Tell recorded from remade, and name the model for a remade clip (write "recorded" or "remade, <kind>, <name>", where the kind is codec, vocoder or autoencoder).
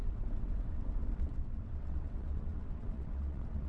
remade, vocoder, WaveNeXt